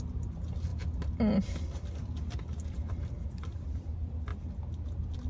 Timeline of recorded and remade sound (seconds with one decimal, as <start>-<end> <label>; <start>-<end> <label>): 0.0-4.3 remade; 4.3-5.3 recorded